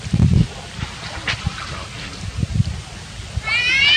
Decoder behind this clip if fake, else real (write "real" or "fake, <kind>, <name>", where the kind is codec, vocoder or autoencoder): real